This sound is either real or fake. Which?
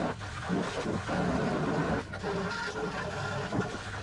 real